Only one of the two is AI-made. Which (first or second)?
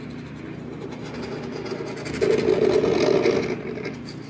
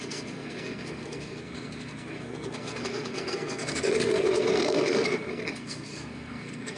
second